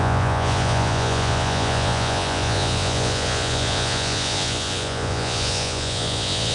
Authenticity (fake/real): fake